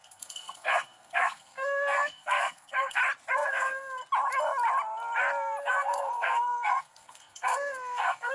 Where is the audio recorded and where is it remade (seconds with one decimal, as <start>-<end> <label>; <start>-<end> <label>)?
0.0-3.0 remade; 3.0-3.5 recorded; 3.5-4.0 remade; 4.0-5.6 recorded; 5.6-8.3 remade